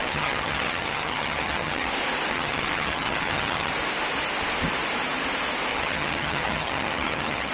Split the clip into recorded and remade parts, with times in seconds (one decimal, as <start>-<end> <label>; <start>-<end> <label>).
0.0-1.9 remade; 1.9-2.3 recorded; 2.3-3.7 remade; 3.7-5.7 recorded; 5.7-7.5 remade